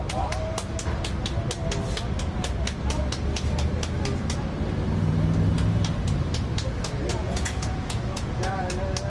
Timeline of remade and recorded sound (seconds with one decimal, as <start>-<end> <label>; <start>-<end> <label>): 0.0-7.1 recorded; 7.1-8.5 remade; 8.5-9.1 recorded